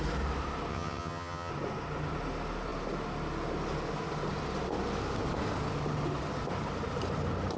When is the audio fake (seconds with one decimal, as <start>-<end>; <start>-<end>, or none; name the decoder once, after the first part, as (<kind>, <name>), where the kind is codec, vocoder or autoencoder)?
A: 0.7-1.5 (vocoder, HiFi-GAN)